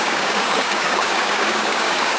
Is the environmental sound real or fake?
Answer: fake